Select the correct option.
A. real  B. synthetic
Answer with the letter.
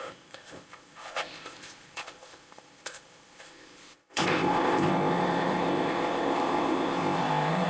B